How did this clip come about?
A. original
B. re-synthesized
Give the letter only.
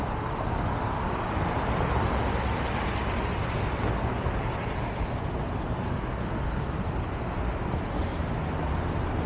A